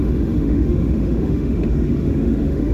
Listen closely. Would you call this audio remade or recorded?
remade